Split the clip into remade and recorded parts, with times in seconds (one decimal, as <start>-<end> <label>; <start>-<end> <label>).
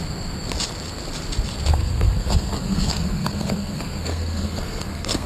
0.0-1.7 recorded; 1.7-5.3 remade